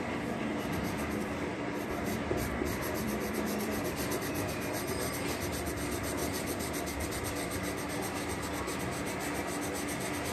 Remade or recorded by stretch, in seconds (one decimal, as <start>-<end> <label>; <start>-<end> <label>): 0.0-1.5 recorded; 1.5-5.4 remade; 5.4-6.2 recorded; 6.2-8.8 remade; 8.8-10.3 recorded